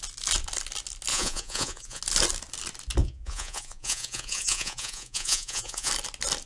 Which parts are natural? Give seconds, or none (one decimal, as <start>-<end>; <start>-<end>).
0.0-1.1; 2.0-3.0; 5.9-6.5